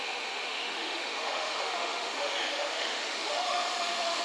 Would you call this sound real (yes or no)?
no